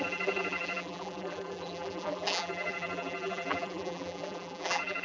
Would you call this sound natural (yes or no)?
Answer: no